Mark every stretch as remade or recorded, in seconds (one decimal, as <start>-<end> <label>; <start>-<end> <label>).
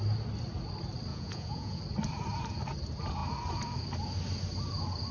0.0-1.1 recorded; 1.1-1.8 remade; 1.8-5.1 recorded